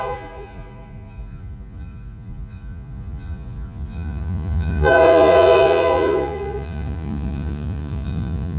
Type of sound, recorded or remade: remade